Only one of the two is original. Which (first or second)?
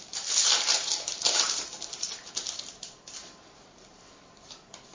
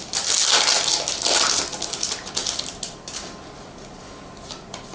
second